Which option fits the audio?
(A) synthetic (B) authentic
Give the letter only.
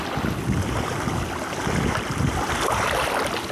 B